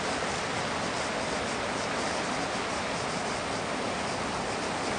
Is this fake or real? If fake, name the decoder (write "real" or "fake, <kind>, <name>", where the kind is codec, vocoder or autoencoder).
real